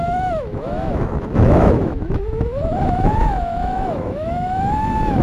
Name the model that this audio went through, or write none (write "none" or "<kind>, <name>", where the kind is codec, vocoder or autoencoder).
autoencoder, DAC-VAE